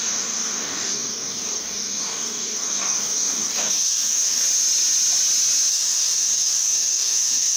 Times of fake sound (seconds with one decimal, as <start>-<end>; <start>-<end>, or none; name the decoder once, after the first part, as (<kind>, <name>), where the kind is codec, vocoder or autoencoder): 0.0-4.4 (codec, DAC); 5.7-7.6